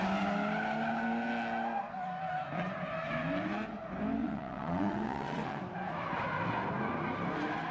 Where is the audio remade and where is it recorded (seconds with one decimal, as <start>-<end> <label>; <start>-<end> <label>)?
0.0-4.2 recorded; 4.2-5.6 remade; 5.6-7.7 recorded